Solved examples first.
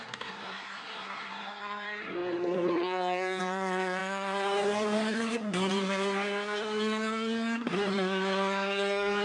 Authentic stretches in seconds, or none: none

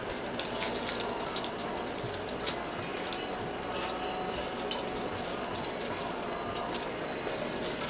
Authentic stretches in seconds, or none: 0.0-7.9

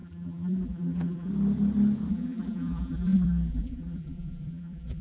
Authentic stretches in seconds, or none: 1.3-2.1

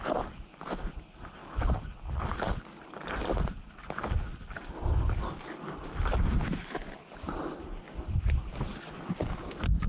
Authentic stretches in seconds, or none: 0.0-9.9

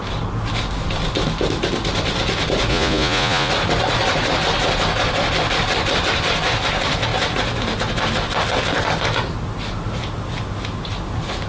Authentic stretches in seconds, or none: 0.0-2.7; 3.5-11.5